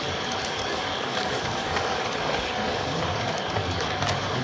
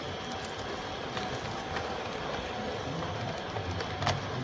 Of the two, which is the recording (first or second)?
second